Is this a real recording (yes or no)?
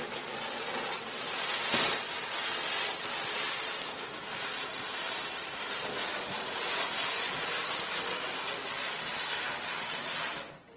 yes